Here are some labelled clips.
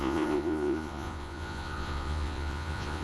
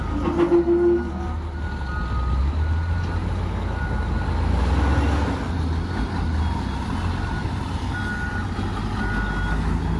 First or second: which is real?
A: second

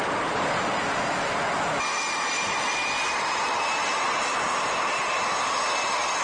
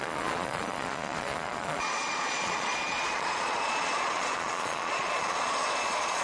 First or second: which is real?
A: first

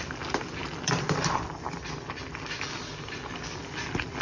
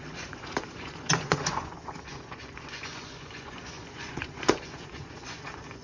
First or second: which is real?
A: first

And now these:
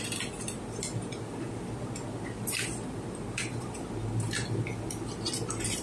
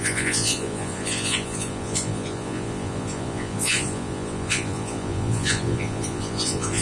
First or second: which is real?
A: first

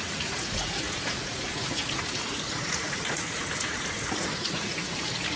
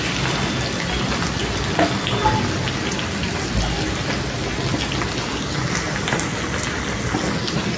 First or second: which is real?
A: second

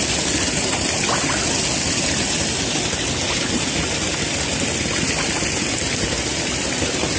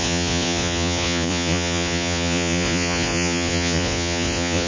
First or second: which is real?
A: first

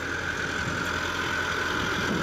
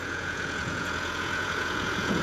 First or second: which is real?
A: first